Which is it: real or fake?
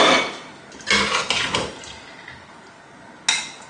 real